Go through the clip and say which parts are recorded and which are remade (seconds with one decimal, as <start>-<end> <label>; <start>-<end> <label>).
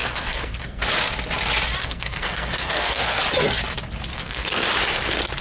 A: 0.0-0.8 remade; 0.8-1.8 recorded; 1.8-3.2 remade; 3.2-4.1 recorded; 4.1-4.6 remade; 4.6-5.4 recorded